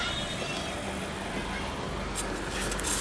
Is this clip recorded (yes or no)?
yes